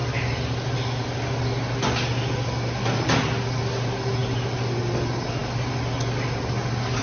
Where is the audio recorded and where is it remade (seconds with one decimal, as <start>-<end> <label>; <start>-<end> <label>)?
0.0-7.0 recorded